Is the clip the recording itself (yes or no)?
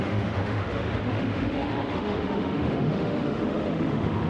no